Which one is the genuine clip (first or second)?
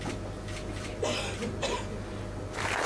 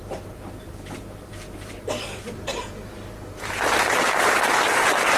first